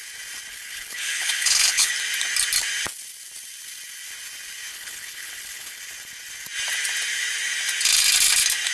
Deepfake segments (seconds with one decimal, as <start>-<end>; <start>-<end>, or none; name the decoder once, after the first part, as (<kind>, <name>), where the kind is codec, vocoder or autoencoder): 0.5-1.9 (codec, HILCodec); 4.7-5.8